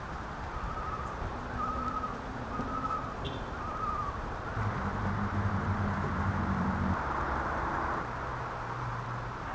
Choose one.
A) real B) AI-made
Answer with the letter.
B